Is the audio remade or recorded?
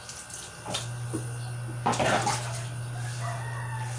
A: recorded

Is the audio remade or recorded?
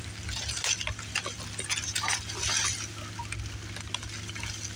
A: recorded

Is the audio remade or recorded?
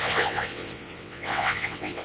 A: remade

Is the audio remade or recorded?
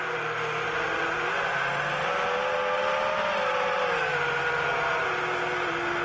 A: recorded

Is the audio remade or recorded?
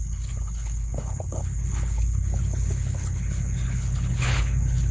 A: remade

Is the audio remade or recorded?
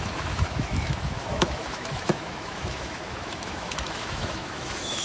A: remade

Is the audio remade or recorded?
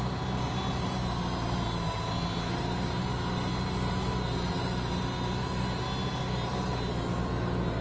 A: recorded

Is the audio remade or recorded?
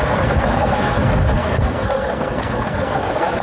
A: remade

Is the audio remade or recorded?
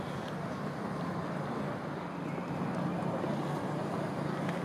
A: recorded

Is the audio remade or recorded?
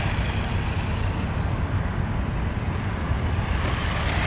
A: recorded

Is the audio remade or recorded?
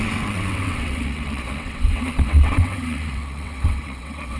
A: remade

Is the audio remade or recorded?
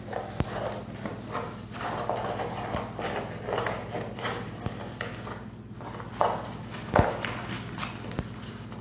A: recorded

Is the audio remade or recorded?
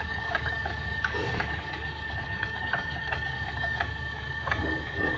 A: remade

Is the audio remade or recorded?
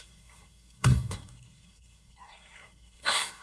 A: remade